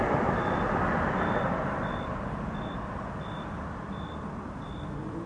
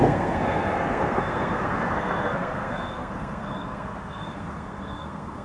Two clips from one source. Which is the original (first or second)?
first